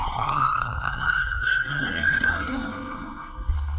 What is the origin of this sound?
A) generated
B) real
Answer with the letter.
A